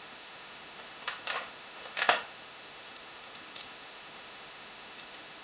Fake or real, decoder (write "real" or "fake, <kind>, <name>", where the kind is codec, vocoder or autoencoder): fake, autoencoder, DAC-VAE